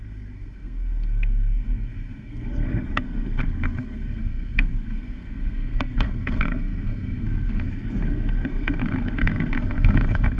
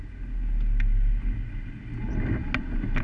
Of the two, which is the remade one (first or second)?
first